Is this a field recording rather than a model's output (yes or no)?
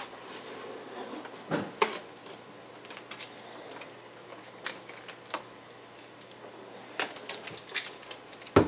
yes